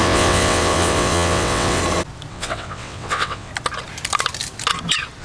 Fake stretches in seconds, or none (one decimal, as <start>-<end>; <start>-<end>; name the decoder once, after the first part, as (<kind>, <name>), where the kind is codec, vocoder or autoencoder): 0.0-1.8 (vocoder, WaveNeXt); 2.3-3.5